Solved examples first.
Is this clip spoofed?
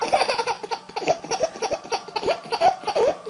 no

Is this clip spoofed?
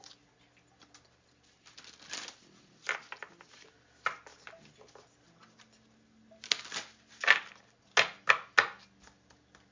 no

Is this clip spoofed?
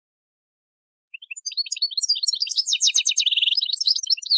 yes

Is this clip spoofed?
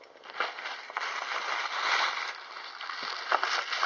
no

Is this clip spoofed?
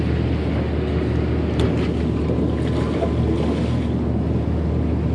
no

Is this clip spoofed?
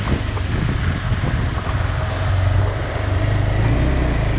no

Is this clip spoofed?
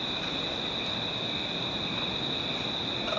no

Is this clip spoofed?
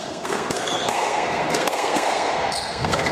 yes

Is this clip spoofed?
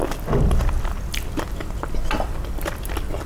no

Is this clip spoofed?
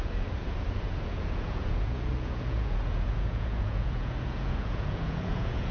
yes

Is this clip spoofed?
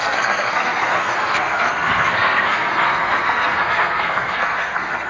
yes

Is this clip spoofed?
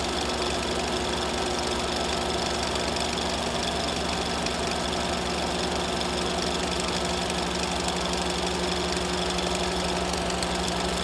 no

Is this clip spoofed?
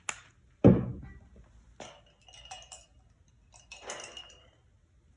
no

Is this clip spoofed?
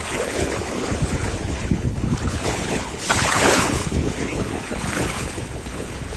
yes